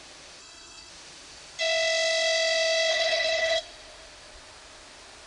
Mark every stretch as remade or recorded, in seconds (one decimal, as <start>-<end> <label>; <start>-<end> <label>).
0.0-0.4 recorded; 0.4-0.9 remade; 0.9-2.9 recorded; 2.9-3.6 remade; 3.6-5.3 recorded